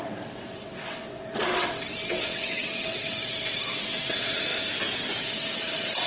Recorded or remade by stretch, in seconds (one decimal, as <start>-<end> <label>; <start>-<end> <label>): 0.0-4.5 remade; 4.5-5.2 recorded; 5.2-6.1 remade